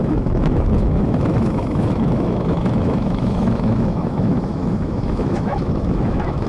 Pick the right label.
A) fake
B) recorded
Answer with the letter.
A